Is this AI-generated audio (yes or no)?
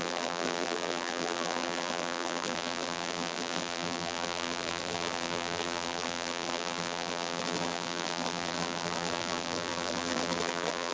yes